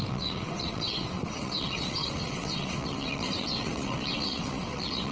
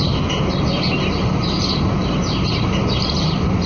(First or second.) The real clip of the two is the second